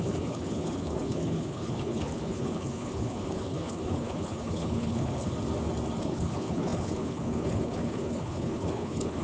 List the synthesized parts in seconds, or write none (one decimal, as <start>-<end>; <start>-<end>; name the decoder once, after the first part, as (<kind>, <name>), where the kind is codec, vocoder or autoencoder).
0.0-5.3 (codec, HILCodec); 6.0-9.2